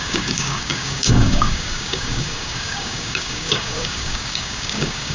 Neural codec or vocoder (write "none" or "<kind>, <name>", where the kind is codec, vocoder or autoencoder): codec, DAC